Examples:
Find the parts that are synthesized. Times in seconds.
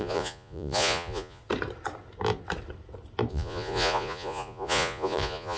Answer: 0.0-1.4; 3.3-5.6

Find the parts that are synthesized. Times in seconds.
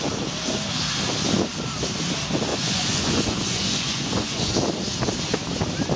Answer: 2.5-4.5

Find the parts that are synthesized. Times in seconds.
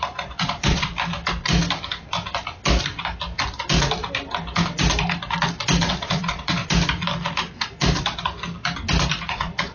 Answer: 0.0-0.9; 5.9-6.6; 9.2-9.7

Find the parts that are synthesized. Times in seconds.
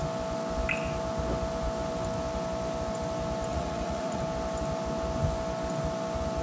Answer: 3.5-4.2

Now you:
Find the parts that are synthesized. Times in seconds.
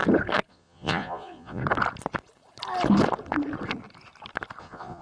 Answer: 0.5-1.6; 4.6-5.0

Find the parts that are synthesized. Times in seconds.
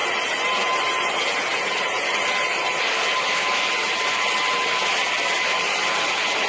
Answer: none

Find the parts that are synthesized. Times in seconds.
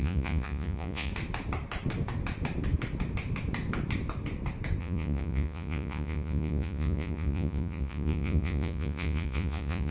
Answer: 0.0-1.1; 4.8-9.9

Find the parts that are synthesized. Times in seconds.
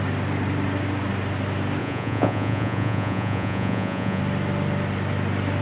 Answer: 1.8-4.2